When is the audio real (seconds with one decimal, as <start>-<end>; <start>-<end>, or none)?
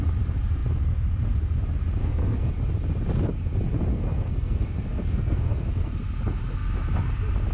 0.0-2.0; 2.5-3.9; 5.9-7.5